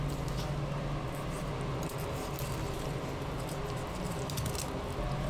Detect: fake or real real